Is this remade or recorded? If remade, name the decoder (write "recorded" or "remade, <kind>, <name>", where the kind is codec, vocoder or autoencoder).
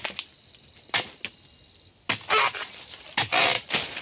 recorded